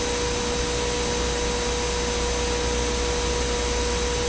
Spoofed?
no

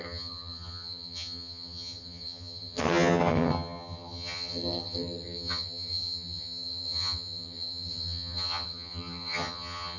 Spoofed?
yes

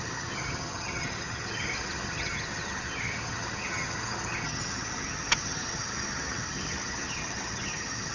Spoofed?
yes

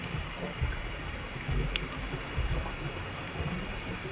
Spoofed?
no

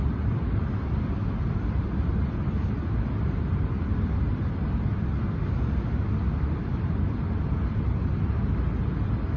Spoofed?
no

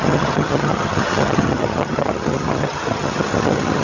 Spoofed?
yes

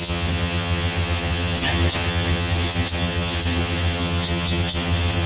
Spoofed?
yes